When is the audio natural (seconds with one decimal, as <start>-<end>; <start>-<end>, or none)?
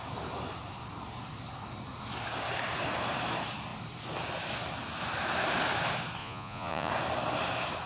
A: 0.0-6.2; 6.9-7.9